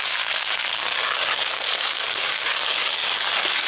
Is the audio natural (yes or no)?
no